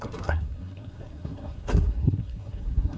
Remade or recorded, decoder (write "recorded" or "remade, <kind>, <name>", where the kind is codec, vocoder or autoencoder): remade, codec, SNAC